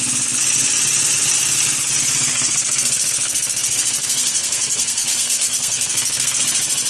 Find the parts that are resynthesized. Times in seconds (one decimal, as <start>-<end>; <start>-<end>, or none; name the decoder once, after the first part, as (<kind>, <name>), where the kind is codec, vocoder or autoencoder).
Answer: 2.3-6.4 (codec, SNAC)